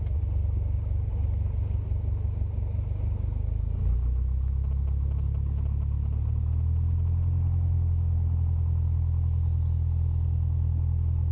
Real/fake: real